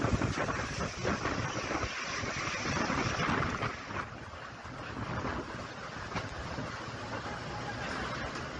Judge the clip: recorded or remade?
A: recorded